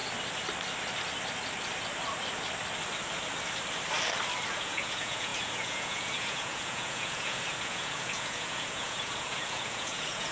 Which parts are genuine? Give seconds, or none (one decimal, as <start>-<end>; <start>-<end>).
0.0-4.5